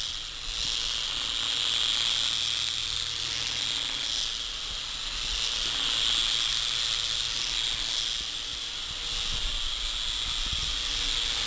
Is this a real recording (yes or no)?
yes